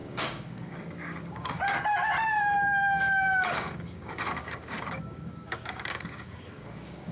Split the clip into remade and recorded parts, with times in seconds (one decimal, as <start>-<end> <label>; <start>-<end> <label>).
0.0-7.1 remade